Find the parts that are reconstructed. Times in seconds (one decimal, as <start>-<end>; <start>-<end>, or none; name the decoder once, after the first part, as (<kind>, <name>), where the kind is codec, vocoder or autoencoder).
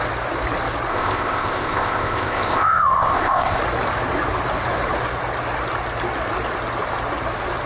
0.9-3.6 (codec, ZipCodec)